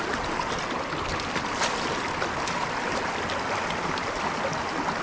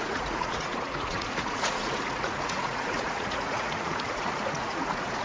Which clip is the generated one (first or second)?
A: second